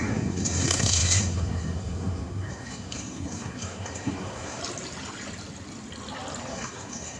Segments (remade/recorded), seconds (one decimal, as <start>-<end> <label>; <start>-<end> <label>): 0.0-4.6 remade; 4.6-6.5 recorded; 6.5-7.2 remade